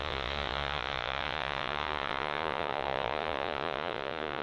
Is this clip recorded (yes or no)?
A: no